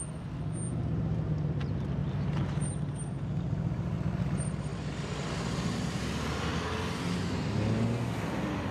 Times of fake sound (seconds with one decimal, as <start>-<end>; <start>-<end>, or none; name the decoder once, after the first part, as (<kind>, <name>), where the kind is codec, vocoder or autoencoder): 2.0-2.8 (vocoder, BigVGAN v2)